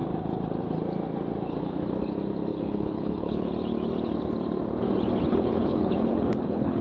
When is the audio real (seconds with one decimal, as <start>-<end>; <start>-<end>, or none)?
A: 0.0-2.5; 3.5-5.3